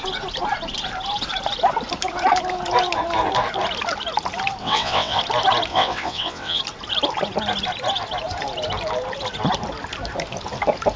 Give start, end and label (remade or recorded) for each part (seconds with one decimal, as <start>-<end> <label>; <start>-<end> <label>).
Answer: 0.0-4.6 recorded; 4.6-5.2 remade; 5.2-5.7 recorded; 5.7-6.6 remade; 6.6-11.0 recorded